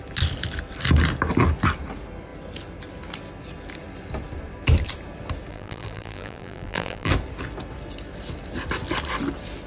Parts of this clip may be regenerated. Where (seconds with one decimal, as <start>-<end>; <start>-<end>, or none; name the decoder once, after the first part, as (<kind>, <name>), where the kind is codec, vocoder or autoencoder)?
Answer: 5.5-7.1 (vocoder, BigVGAN v2)